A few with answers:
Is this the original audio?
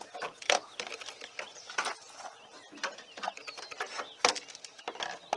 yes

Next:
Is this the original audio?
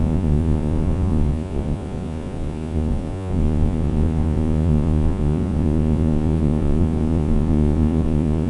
no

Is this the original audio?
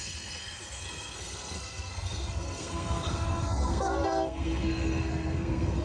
no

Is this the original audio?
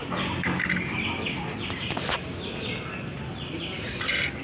no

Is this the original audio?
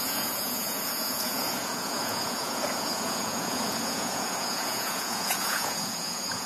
no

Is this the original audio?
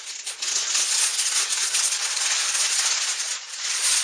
no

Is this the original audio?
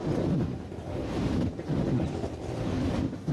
yes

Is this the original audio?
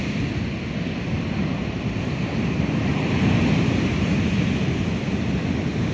yes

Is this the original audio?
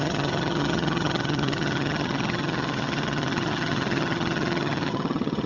no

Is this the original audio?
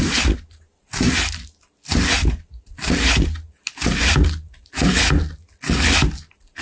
yes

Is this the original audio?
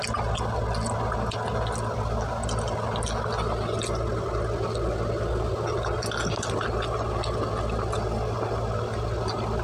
yes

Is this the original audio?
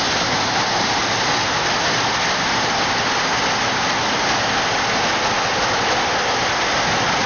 yes